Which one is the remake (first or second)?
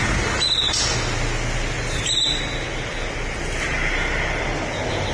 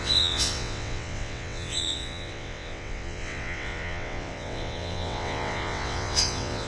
second